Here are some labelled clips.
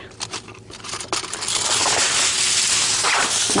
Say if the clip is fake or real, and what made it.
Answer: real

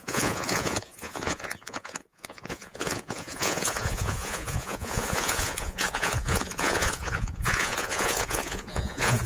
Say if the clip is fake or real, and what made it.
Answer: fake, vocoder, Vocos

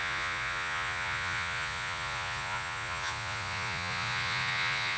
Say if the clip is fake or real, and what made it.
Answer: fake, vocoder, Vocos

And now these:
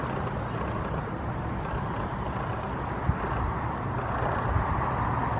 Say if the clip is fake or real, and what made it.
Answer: real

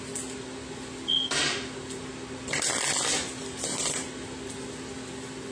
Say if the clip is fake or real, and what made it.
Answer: real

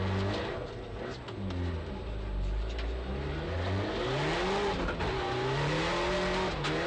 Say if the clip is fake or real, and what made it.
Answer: real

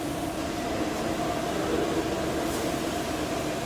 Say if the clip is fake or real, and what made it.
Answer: real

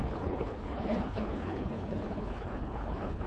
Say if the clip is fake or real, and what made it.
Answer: fake, codec, HILCodec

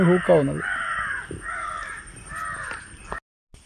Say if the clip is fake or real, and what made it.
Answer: real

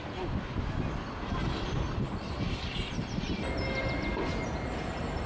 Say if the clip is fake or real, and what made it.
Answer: real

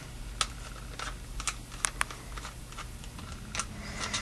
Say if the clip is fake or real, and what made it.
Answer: real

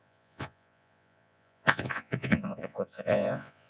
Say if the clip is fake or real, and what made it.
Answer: fake, vocoder, Vocos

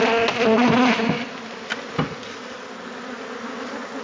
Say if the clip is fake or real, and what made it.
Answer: real